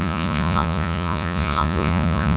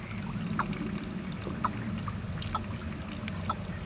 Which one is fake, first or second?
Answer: first